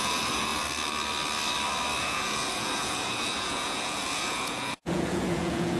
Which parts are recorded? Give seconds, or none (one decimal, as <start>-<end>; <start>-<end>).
0.5-2.0